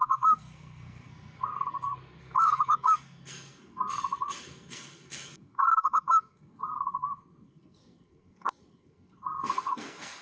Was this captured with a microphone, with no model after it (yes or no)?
no